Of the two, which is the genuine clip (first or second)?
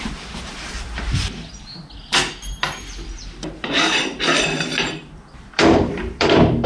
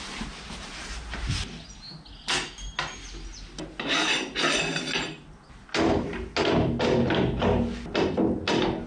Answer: second